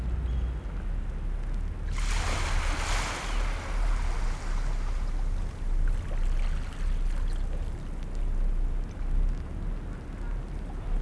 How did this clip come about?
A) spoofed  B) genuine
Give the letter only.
B